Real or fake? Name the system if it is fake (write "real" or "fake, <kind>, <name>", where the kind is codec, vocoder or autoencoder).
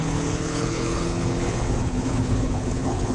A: fake, codec, HILCodec